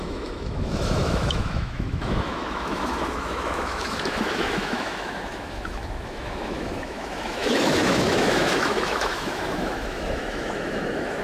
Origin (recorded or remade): remade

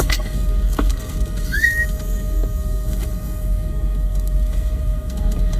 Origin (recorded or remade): remade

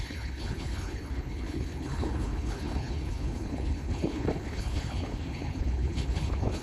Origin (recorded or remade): remade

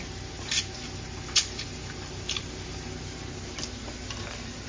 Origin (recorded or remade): recorded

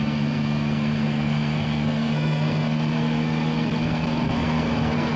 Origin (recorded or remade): remade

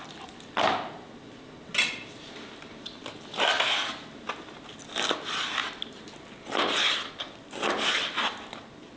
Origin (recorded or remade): recorded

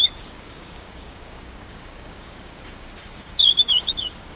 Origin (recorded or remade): remade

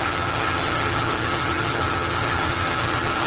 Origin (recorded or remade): remade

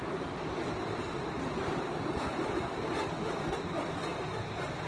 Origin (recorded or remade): recorded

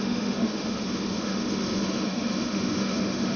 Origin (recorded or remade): remade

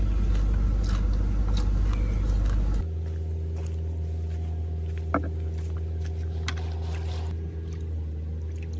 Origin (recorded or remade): recorded